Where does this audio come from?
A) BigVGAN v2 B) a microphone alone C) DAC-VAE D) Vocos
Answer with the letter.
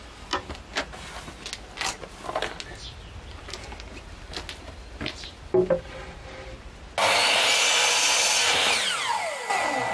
B